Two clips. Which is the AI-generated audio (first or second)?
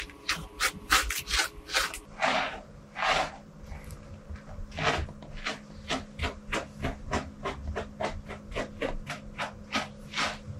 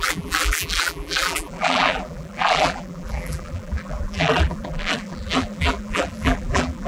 second